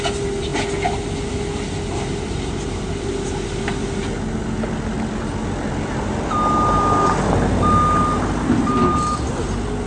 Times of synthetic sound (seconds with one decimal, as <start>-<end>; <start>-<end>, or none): none